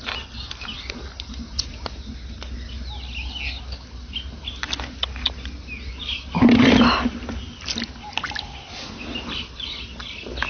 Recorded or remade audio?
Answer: recorded